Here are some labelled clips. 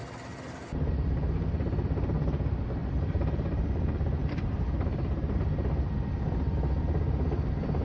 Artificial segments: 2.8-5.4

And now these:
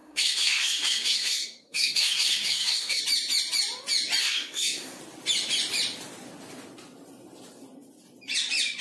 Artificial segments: 0.0-3.0; 4.2-5.0